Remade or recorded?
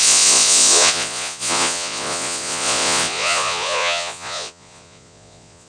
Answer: remade